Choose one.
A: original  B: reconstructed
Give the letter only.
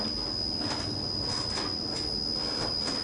A